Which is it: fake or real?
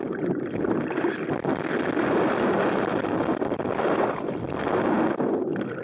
real